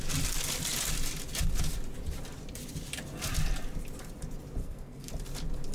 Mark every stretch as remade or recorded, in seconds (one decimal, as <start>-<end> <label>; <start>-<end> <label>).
0.0-4.6 recorded; 4.6-5.1 remade; 5.1-5.7 recorded